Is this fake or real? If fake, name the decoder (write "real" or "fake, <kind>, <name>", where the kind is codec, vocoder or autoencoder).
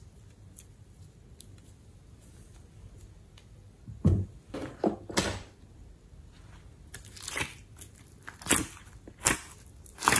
real